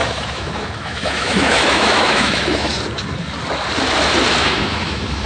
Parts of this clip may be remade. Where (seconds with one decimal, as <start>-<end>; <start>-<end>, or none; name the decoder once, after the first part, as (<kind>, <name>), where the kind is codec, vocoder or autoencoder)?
0.0-2.7 (autoencoder, DAC-VAE); 4.4-5.3